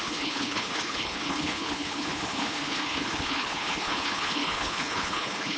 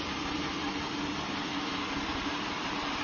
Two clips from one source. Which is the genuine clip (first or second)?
second